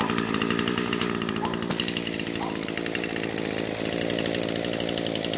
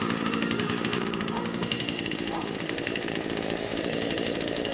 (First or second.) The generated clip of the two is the second